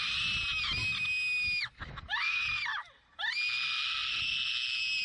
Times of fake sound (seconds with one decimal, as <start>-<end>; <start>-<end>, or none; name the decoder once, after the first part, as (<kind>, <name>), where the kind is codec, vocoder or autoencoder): none